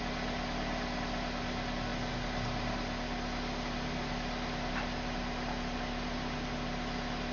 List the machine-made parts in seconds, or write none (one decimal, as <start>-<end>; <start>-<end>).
none